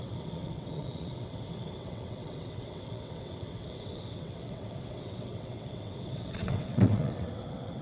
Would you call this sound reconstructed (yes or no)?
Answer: yes